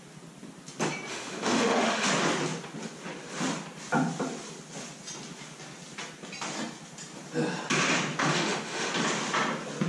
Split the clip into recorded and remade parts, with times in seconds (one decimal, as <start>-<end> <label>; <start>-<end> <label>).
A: 0.0-1.1 recorded; 1.1-2.1 remade; 2.1-8.2 recorded; 8.2-8.9 remade; 8.9-9.9 recorded